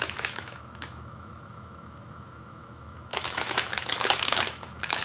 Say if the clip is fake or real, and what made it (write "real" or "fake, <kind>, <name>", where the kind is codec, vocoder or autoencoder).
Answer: fake, autoencoder, DAC-VAE